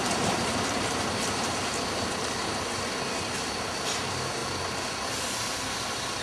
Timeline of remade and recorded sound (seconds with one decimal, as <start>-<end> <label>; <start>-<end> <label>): 0.0-4.4 remade; 4.4-6.2 recorded